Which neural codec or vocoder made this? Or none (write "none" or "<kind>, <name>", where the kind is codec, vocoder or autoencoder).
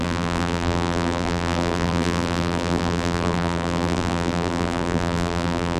vocoder, BigVGAN v2